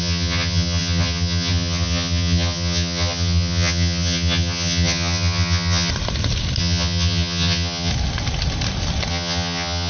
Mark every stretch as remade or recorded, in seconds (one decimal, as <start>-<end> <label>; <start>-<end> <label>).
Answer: 0.0-5.9 remade; 5.9-6.6 recorded; 6.6-7.9 remade; 7.9-9.1 recorded; 9.1-9.9 remade